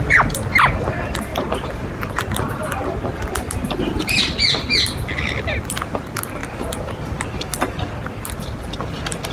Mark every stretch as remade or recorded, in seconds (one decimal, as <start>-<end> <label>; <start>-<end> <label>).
0.0-9.3 recorded